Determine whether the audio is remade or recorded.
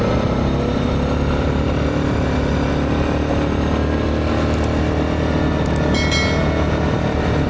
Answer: recorded